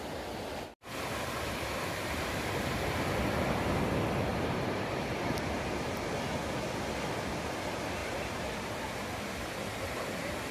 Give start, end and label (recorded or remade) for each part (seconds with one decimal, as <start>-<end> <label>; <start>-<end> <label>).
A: 0.0-4.3 recorded; 4.3-6.2 remade; 6.2-8.0 recorded; 8.0-8.8 remade; 8.8-10.5 recorded